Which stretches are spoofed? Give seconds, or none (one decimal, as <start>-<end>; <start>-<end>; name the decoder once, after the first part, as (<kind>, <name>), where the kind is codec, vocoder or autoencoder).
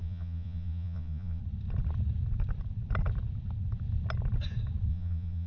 0.0-1.4 (vocoder, Vocos); 4.9-5.5